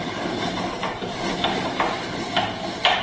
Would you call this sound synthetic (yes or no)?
yes